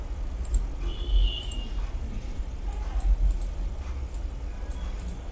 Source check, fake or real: real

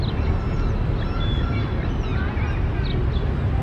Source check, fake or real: real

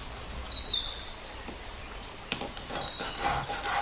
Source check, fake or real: real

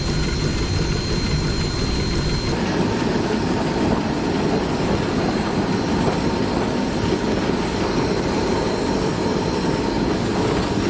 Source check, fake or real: real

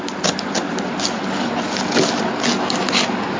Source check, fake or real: real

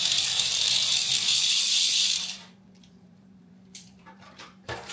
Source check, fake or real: fake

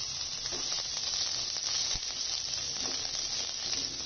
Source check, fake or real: real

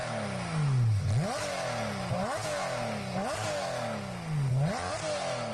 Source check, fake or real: real